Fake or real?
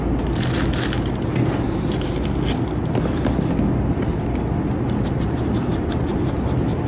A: real